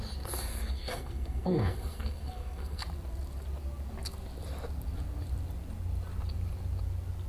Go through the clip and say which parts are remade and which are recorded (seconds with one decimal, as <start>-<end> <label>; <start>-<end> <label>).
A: 0.0-0.5 recorded; 0.5-2.8 remade; 2.8-7.3 recorded